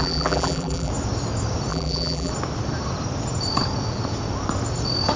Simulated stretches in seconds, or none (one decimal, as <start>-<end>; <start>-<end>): 0.0-0.9; 1.7-2.3